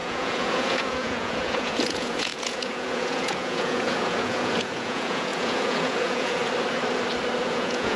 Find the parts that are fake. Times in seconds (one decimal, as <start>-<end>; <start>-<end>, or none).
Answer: 0.0-6.4; 7.4-8.0